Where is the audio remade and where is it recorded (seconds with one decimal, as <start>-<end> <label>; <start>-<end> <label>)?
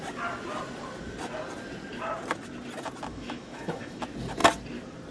0.0-3.1 recorded; 3.1-4.0 remade; 4.0-5.1 recorded